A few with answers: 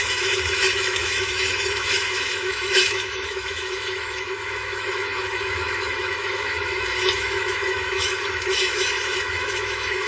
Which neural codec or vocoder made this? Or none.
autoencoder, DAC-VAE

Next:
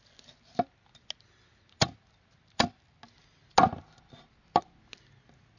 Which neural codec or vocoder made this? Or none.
none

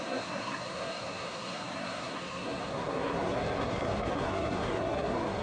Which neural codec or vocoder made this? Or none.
codec, SNAC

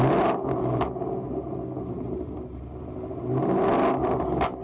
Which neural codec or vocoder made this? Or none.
none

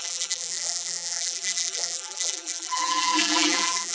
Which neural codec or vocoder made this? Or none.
vocoder, BigVGAN v2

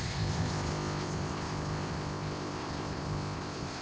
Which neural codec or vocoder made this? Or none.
codec, ZipCodec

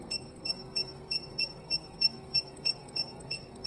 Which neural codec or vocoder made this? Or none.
codec, SNAC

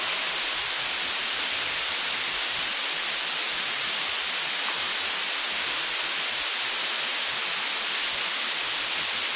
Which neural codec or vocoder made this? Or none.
none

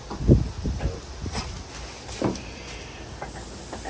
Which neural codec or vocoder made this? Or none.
none